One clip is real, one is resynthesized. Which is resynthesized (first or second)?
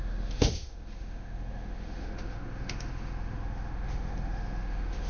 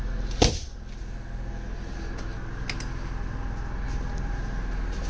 first